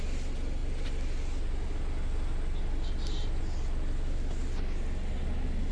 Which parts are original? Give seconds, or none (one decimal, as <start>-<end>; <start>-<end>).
0.0-5.7